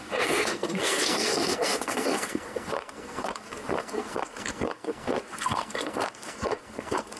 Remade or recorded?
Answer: remade